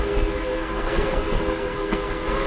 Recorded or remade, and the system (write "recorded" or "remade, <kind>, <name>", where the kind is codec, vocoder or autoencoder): remade, codec, SNAC